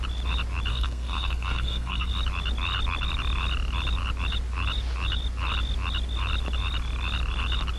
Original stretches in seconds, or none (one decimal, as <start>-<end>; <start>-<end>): 0.0-0.7; 2.1-7.8